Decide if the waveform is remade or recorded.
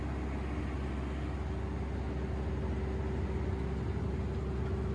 recorded